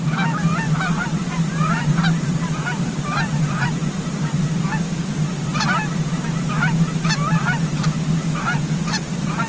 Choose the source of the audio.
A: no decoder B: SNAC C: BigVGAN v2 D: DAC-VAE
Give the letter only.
C